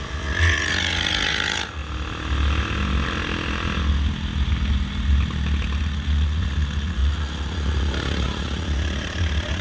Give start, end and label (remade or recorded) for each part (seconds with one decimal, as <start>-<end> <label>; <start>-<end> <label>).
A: 0.0-1.8 remade; 1.8-5.8 recorded; 5.8-9.6 remade